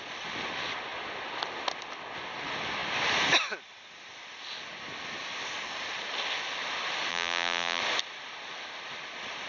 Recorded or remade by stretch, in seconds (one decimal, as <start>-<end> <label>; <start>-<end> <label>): 0.0-7.1 recorded; 7.1-7.8 remade; 7.8-9.5 recorded

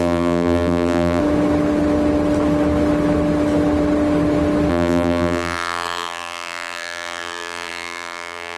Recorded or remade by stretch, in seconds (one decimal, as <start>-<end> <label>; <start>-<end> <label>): 0.0-1.2 remade; 1.2-4.7 recorded; 4.7-8.6 remade

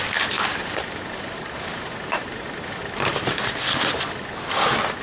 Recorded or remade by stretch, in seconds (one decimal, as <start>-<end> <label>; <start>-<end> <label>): 0.0-0.5 recorded; 0.5-3.2 remade; 3.2-5.0 recorded

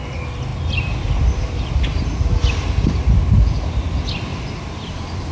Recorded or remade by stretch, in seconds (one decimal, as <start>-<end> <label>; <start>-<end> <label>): 0.0-4.3 recorded; 4.3-5.3 remade

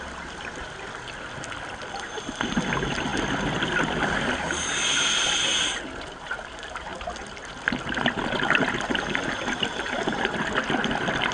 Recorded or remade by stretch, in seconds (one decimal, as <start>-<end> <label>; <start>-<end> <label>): 0.0-11.3 recorded